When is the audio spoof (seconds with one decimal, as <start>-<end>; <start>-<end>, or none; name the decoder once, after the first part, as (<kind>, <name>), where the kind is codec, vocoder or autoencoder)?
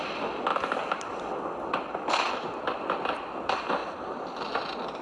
0.5-1.4 (vocoder, BigVGAN v2)